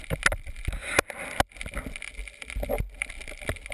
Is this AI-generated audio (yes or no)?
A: no